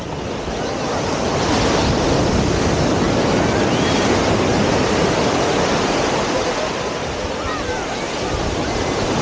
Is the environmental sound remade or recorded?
recorded